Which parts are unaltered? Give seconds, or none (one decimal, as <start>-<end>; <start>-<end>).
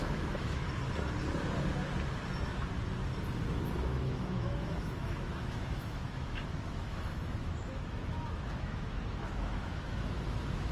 0.6-3.8